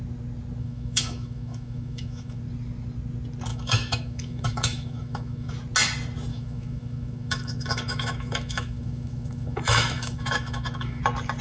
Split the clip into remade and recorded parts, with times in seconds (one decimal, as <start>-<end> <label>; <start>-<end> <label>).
0.0-0.6 recorded; 0.6-2.4 remade; 2.4-3.5 recorded; 3.5-5.5 remade; 5.5-6.3 recorded; 6.3-11.0 remade; 11.0-11.4 recorded